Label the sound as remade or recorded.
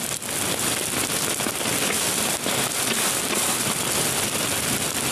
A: recorded